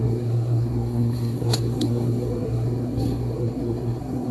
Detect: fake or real fake